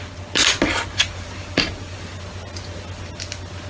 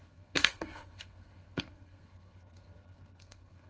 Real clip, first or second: first